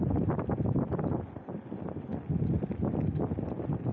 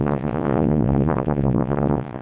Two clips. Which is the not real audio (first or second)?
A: second